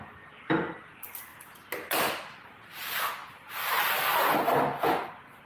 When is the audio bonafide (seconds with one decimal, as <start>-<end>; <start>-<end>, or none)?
0.0-5.5